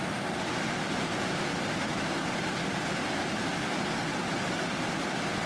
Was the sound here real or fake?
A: real